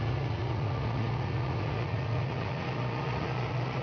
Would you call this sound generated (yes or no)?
yes